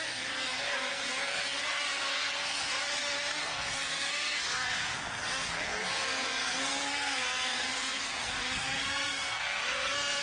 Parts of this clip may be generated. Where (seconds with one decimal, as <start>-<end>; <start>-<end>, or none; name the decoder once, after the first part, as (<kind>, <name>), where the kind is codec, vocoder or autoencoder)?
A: 0.0-2.7 (codec, SNAC); 3.4-10.2